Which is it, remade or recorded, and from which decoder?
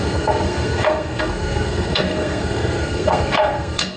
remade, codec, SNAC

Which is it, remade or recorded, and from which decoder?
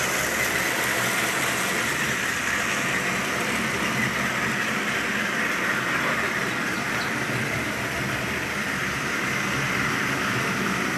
recorded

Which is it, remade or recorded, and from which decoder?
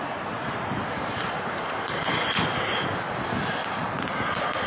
recorded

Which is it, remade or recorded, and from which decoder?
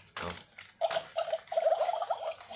recorded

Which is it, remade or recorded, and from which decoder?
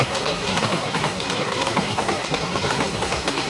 remade, codec, SNAC